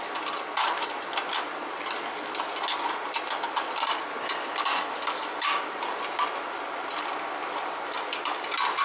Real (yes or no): yes